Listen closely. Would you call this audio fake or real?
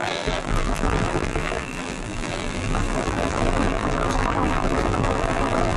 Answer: fake